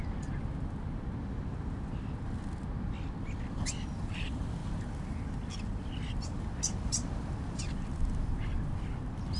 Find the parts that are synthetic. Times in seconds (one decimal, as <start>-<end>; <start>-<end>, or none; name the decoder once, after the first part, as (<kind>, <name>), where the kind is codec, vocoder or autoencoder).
none